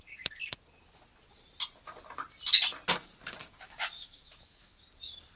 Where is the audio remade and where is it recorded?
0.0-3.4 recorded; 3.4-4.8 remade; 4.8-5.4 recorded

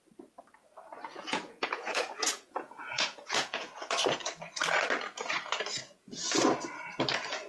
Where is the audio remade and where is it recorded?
0.0-1.1 recorded; 1.1-3.7 remade; 3.7-7.5 recorded